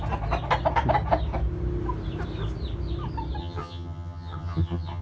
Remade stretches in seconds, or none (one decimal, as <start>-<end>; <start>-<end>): 3.4-5.0